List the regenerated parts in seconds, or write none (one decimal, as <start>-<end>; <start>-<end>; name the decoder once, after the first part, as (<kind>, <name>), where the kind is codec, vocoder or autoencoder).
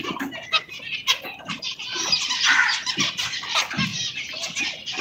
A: 1.9-2.9 (vocoder, BigVGAN v2); 3.9-5.0